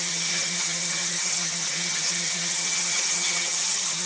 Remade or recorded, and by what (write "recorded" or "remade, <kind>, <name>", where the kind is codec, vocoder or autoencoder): remade, vocoder, HiFi-GAN